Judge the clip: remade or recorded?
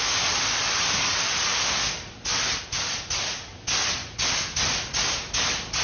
recorded